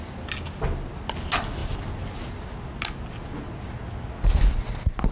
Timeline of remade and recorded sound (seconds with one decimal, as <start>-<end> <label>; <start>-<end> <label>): 0.0-5.1 recorded